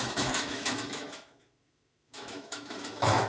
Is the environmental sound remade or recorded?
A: remade